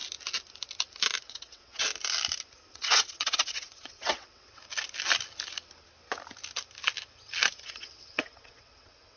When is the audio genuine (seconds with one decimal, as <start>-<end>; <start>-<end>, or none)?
0.0-1.2; 1.9-2.7; 4.6-7.6